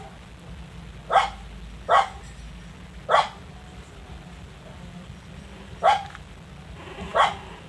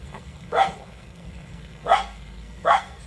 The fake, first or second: second